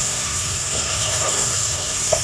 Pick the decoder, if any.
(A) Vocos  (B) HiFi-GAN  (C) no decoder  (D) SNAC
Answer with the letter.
D